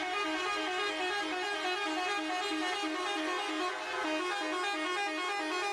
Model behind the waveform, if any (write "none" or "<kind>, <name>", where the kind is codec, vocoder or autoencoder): none